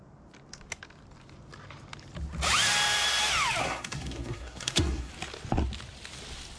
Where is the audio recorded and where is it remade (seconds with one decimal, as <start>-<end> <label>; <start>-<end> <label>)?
0.0-3.6 recorded; 3.6-5.1 remade; 5.1-6.6 recorded